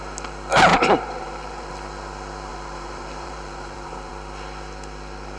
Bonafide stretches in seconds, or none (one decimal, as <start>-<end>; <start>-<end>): 0.0-0.7; 1.7-2.5; 4.1-5.4